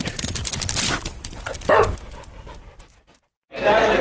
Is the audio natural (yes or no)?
yes